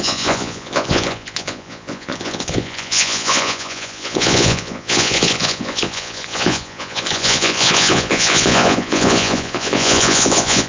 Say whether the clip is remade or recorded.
remade